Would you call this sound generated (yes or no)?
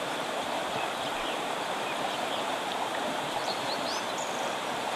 yes